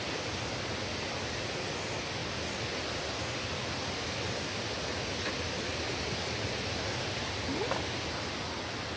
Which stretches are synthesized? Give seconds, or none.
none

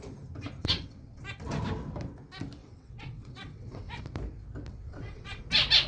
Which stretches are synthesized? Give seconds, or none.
0.6-1.2 (vocoder, WaveNeXt); 2.6-4.0; 4.7-5.4